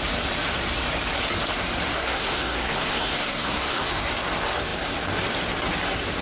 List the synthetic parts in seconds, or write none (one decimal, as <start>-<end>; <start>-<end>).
1.9-4.1